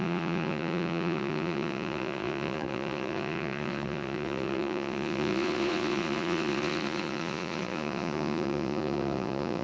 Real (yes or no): no